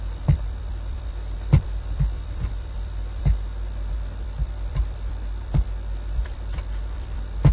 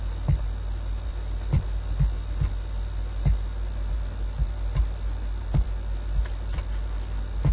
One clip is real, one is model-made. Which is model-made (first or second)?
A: first